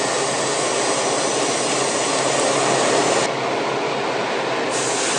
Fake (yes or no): no